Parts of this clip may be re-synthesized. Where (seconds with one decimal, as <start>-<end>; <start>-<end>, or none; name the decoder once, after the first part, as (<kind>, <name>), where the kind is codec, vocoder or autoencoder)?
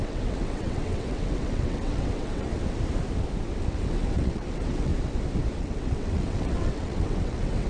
0.0-2.5 (vocoder, WaveNeXt); 3.7-4.9; 5.6-7.7